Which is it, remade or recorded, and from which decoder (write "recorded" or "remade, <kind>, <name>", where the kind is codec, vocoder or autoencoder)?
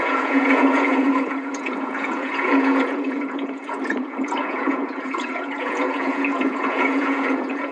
remade, vocoder, Vocos